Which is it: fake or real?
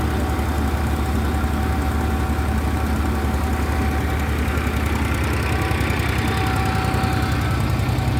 real